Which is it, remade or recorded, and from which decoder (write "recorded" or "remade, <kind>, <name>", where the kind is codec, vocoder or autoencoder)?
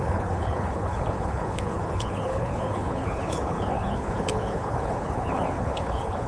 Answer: remade, codec, HILCodec